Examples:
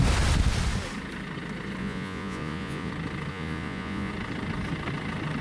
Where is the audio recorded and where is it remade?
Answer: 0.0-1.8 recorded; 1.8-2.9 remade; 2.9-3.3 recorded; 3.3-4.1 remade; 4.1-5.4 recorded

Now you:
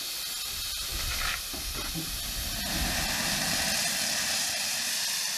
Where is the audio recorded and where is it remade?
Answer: 0.0-5.4 recorded

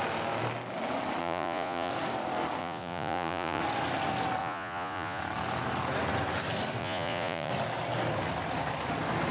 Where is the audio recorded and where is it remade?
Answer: 0.0-1.2 recorded; 1.2-1.9 remade; 1.9-2.6 recorded; 2.6-3.6 remade; 3.6-4.4 recorded; 4.4-5.2 remade; 5.2-6.8 recorded; 6.8-7.5 remade; 7.5-9.3 recorded

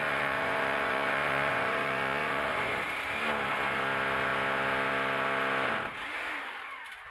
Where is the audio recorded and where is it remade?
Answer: 0.0-2.7 remade; 2.7-7.1 recorded

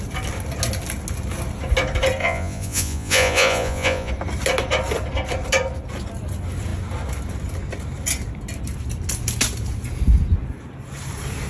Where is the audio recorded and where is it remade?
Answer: 0.0-2.2 recorded; 2.2-4.1 remade; 4.1-11.5 recorded

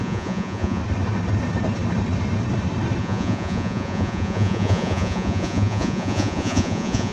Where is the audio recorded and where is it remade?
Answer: 0.0-0.8 remade; 0.8-3.0 recorded; 3.0-7.1 remade

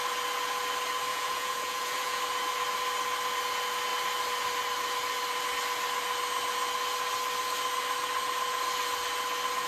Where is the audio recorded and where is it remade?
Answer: 0.0-1.1 recorded; 1.1-2.2 remade; 2.2-9.7 recorded